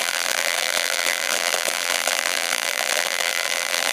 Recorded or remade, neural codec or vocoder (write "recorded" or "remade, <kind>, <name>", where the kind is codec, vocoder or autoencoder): remade, vocoder, BigVGAN v2